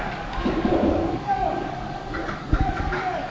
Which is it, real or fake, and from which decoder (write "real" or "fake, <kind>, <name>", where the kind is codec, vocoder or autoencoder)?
fake, codec, DAC